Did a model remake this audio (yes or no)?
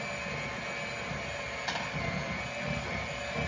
no